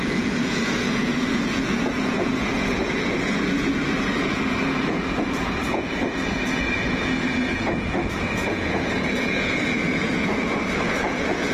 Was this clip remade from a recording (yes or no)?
yes